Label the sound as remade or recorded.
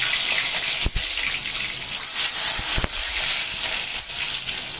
recorded